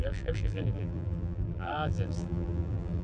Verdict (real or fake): fake